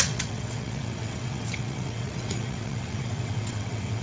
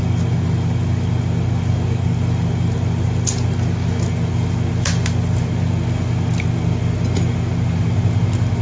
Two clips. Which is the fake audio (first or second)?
first